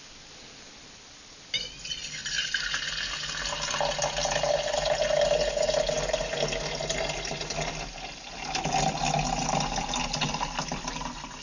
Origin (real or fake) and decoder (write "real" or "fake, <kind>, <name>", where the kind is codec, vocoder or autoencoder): real